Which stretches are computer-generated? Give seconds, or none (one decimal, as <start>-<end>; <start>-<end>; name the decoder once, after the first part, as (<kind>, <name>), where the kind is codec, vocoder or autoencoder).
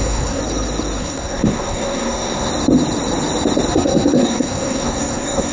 0.0-0.4 (codec, SNAC); 1.0-2.5; 3.7-5.5